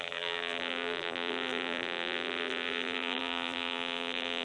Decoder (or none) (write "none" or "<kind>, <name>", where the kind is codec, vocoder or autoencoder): vocoder, BigVGAN v2